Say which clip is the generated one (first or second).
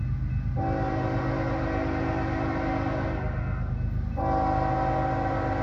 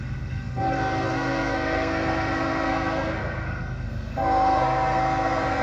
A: second